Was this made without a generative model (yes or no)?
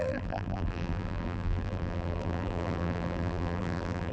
no